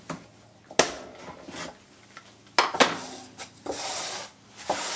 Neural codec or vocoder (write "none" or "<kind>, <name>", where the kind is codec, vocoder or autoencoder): none